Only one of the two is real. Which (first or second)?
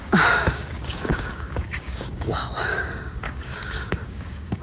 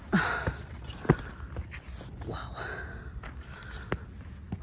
second